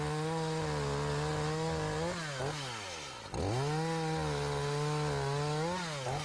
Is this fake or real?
real